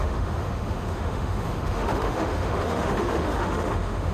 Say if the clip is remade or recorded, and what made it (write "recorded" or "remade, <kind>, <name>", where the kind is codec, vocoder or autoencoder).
remade, autoencoder, DAC-VAE